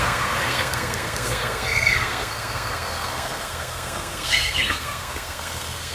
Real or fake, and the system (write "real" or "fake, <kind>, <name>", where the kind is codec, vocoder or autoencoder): fake, codec, SNAC